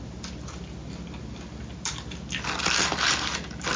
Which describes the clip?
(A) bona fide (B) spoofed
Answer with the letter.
A